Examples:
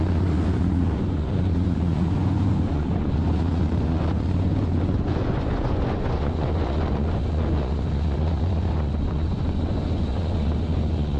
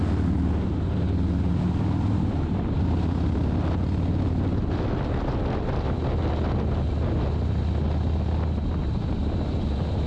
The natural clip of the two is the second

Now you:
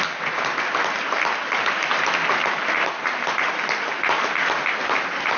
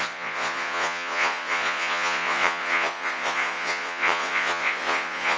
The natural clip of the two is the first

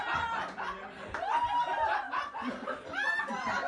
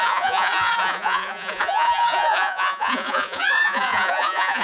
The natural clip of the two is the first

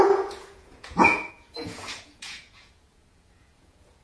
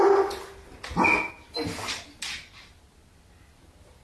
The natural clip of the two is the second